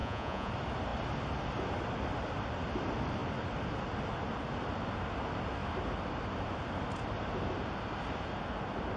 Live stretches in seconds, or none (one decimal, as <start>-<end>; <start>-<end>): 0.5-9.0